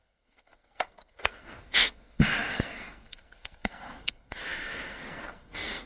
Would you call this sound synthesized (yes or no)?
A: yes